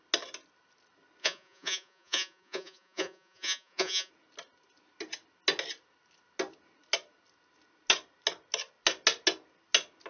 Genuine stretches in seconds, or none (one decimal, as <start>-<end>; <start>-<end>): 0.0-1.2; 4.1-10.1